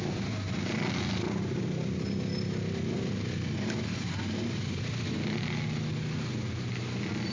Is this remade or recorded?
recorded